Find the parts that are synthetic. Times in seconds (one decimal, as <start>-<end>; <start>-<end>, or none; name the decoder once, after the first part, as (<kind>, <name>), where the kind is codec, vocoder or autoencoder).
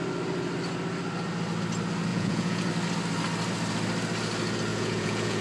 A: 2.1-2.7 (vocoder, Vocos); 4.7-5.4